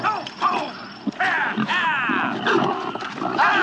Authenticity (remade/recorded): recorded